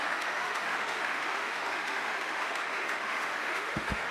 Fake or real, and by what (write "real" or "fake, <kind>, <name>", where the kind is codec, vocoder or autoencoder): fake, autoencoder, DAC-VAE